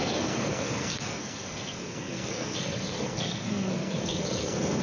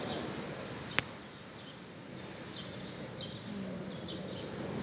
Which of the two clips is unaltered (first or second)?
second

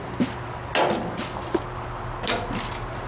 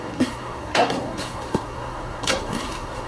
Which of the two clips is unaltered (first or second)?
first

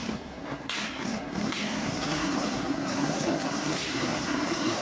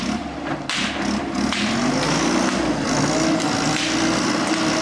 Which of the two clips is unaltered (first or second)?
second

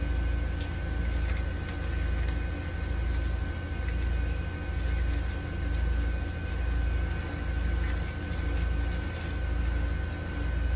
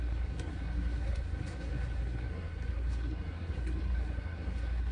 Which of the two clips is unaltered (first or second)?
first